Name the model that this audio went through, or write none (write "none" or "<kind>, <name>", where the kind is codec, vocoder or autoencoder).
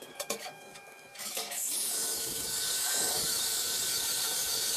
codec, DAC